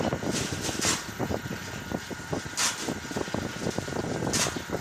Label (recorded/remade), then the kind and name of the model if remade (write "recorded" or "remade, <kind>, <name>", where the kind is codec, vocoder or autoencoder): recorded